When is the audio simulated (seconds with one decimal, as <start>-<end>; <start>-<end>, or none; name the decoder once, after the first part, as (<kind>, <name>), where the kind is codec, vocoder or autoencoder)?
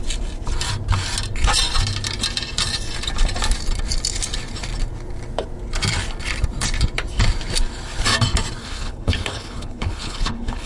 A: 8.6-10.7 (codec, HILCodec)